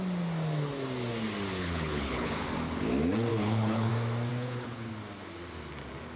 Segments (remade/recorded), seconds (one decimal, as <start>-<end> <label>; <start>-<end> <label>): 0.0-1.6 recorded; 1.6-2.5 remade; 2.5-3.3 recorded; 3.3-3.9 remade; 3.9-4.3 recorded; 4.3-4.9 remade; 4.9-6.2 recorded